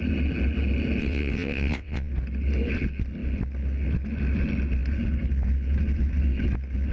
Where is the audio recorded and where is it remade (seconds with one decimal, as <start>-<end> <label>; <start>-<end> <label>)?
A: 0.0-1.0 recorded; 1.0-2.1 remade; 2.1-6.9 recorded